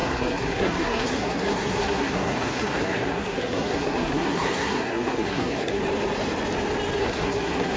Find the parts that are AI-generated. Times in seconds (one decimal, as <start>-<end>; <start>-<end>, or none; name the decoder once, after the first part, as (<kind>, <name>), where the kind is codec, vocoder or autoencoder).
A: 0.0-5.8 (codec, SNAC); 7.0-7.8

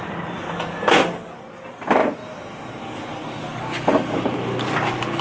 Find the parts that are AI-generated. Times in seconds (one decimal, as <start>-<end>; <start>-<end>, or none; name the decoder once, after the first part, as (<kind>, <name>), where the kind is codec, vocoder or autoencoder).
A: none

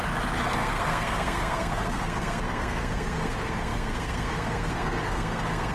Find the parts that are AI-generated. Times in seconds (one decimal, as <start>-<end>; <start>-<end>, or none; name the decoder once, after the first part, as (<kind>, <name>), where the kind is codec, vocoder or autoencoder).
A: 0.5-5.7 (codec, SNAC)

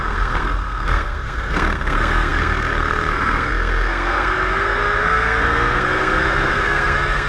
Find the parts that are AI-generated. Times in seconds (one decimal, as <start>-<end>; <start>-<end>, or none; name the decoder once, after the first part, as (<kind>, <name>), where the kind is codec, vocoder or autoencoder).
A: 0.0-7.3 (codec, SNAC)

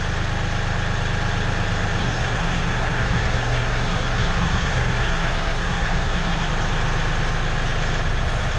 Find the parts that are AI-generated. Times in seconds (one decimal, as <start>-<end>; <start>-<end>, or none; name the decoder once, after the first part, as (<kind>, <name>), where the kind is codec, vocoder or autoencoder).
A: 2.0-6.5 (codec, SNAC)

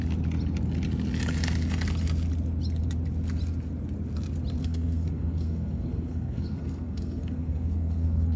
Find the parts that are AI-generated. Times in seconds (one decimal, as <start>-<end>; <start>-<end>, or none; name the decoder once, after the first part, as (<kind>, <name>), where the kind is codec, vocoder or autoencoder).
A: 4.6-8.4 (codec, SNAC)

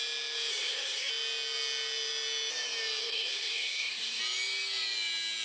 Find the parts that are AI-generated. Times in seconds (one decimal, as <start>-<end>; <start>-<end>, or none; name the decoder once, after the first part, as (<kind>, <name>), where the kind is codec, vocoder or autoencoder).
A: 0.5-1.1 (codec, SNAC); 3.0-4.2